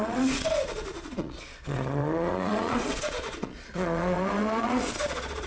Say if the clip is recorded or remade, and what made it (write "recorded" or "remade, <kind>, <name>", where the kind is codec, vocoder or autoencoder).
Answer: remade, vocoder, Vocos